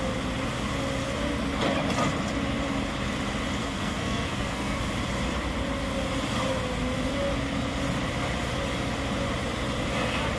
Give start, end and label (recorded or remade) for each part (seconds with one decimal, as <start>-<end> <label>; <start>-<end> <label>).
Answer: 0.0-3.6 recorded; 3.6-4.8 remade; 4.8-10.4 recorded